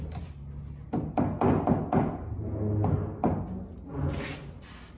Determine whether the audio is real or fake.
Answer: real